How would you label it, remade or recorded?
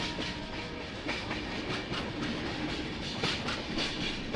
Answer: recorded